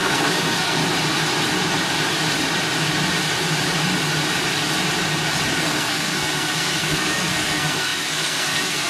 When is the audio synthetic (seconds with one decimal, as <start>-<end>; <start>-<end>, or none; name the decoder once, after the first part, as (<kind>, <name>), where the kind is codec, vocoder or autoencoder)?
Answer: 0.0-0.8 (codec, SNAC); 5.5-8.9